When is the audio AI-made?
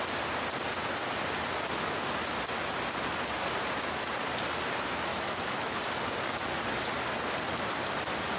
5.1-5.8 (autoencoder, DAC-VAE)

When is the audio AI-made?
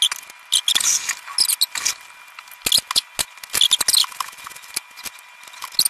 none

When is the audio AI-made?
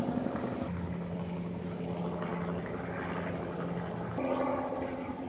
none